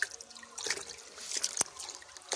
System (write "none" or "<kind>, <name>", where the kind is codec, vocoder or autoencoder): none